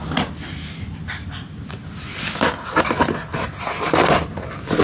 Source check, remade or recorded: recorded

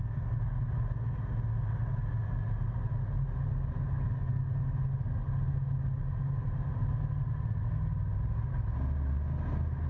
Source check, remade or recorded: recorded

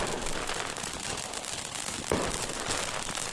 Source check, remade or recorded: recorded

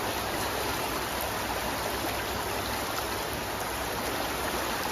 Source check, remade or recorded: recorded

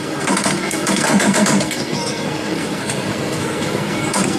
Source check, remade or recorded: remade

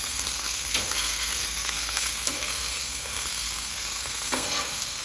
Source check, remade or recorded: remade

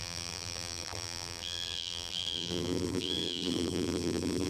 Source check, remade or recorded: remade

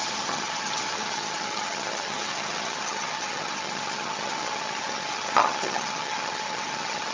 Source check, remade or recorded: remade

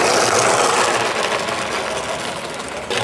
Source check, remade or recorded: recorded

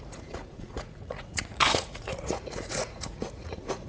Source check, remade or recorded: remade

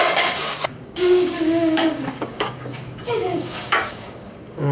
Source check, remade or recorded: remade